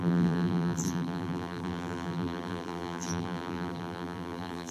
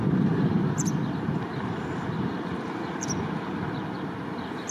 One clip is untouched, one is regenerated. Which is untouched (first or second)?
second